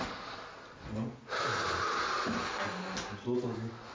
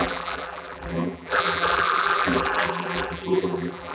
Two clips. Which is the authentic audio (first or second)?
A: first